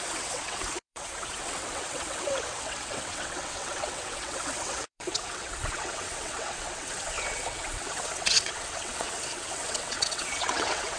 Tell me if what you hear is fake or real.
fake